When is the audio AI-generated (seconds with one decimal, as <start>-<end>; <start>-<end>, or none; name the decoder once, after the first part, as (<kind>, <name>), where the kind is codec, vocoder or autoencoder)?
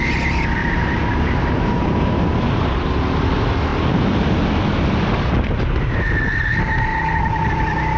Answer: 0.6-3.0 (vocoder, BigVGAN v2)